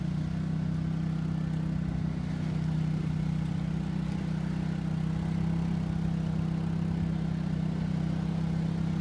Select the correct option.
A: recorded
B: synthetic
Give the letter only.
A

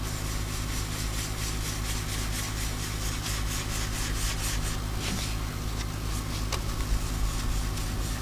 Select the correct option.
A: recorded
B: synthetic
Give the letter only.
A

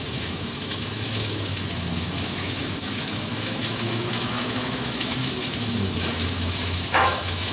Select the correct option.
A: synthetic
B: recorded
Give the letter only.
A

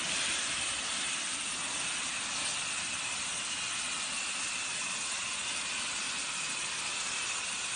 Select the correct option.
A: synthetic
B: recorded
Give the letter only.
B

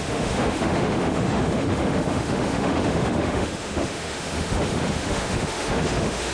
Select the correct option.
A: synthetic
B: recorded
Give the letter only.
A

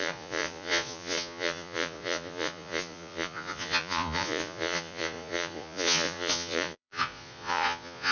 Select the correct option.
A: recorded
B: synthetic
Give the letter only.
B